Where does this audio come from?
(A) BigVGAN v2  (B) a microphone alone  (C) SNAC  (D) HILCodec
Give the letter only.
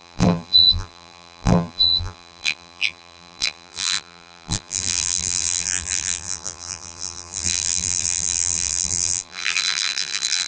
A